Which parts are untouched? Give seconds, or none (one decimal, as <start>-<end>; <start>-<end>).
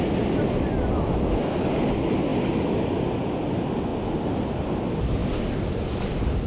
0.0-6.5